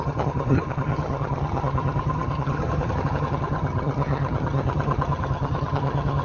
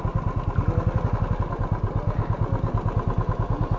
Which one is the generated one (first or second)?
first